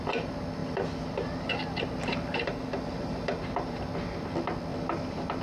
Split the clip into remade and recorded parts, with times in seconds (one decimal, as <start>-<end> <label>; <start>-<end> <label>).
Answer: 0.0-0.6 recorded; 0.6-3.8 remade; 3.8-4.7 recorded; 4.7-5.4 remade